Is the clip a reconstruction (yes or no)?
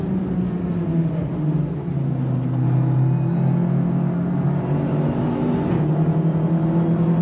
no